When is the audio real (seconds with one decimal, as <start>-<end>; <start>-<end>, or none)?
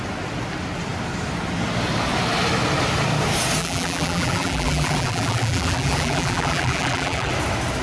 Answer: 0.0-3.6; 7.3-7.8